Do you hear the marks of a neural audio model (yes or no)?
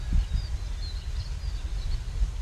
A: no